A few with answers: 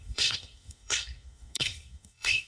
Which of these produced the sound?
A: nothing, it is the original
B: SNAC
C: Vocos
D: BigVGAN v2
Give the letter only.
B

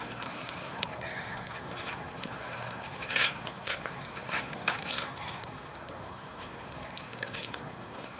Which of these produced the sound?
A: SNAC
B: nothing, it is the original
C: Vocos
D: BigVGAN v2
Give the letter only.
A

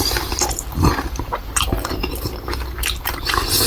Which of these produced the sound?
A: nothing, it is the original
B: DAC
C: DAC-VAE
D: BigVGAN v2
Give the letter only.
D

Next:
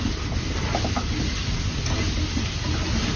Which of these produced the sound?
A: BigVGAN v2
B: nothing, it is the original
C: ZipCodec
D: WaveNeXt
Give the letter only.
B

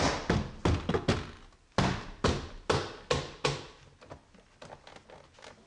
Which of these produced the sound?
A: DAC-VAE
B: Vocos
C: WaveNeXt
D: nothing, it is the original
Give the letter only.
D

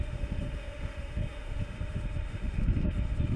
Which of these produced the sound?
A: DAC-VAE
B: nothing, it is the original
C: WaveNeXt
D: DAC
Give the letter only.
A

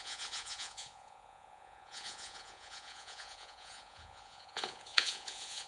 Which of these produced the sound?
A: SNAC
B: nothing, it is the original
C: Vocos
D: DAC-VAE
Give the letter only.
C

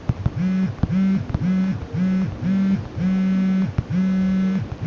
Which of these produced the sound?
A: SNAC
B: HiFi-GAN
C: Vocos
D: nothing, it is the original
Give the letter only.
D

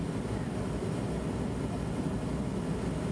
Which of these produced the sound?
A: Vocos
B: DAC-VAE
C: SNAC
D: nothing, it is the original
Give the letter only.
D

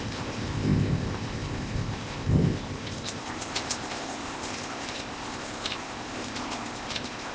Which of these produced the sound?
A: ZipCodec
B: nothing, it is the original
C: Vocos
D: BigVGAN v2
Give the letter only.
A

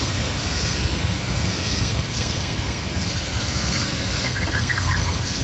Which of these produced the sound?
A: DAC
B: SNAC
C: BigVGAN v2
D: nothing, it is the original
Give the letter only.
B